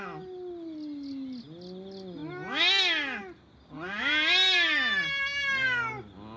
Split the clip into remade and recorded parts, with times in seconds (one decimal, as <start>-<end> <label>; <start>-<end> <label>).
0.0-6.4 recorded